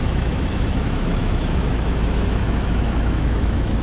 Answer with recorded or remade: remade